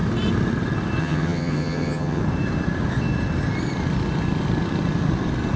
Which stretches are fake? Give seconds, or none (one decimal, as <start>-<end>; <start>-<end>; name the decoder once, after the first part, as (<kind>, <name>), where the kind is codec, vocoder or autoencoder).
1.0-2.2 (vocoder, HiFi-GAN)